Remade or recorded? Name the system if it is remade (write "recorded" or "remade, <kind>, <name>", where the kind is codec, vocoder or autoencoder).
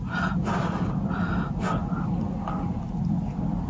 recorded